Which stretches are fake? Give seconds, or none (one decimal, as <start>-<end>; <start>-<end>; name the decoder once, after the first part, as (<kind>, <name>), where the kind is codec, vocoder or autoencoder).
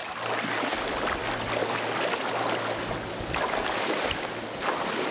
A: none